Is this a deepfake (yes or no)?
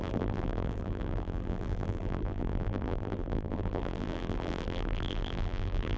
yes